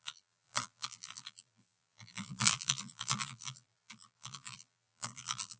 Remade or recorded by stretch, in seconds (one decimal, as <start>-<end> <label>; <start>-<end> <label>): 0.0-5.6 remade

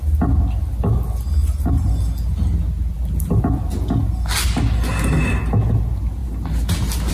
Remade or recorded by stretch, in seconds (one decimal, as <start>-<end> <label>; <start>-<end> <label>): 0.0-7.1 recorded

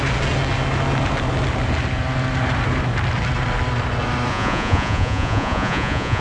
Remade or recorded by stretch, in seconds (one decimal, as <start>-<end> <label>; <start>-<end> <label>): 0.0-4.3 recorded; 4.3-6.2 remade

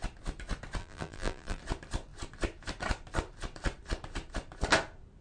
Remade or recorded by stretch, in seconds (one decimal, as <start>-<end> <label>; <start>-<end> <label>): 0.0-0.8 recorded; 0.8-1.6 remade; 1.6-5.2 recorded

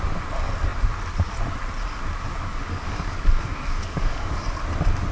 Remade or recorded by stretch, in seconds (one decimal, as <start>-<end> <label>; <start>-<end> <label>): 0.0-2.3 recorded; 2.3-4.4 remade; 4.4-5.1 recorded